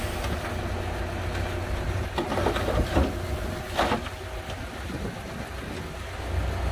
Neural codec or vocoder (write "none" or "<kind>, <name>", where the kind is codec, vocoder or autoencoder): none